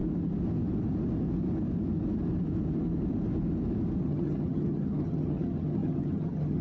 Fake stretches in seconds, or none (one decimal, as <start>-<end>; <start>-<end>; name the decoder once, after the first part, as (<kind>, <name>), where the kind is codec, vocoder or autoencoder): 4.0-6.6 (vocoder, HiFi-GAN)